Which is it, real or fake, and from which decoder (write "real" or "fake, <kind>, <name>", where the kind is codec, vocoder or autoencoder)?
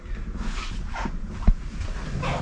real